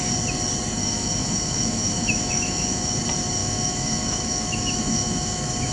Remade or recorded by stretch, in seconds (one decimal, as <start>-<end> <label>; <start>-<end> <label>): 0.0-0.8 recorded; 0.8-3.0 remade; 3.0-3.4 recorded; 3.4-5.7 remade